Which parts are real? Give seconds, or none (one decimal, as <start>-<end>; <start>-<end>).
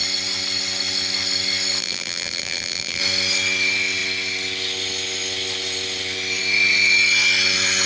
0.0-1.8; 3.0-7.9